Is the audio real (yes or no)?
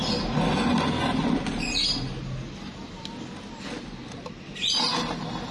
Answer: yes